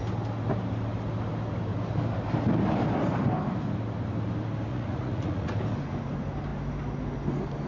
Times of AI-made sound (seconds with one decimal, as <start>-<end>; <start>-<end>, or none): 4.7-5.5

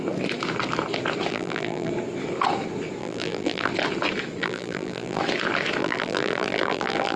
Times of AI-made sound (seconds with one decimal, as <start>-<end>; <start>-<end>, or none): 1.3-1.9; 3.0-3.7; 4.4-5.2; 5.8-7.2

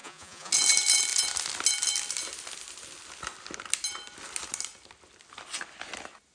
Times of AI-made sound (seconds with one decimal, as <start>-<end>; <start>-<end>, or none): 0.0-0.5

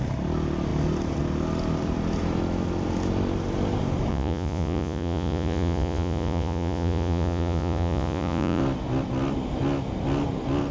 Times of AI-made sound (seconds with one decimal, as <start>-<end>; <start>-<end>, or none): 4.1-8.6